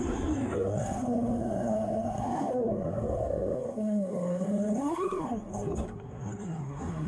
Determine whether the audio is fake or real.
fake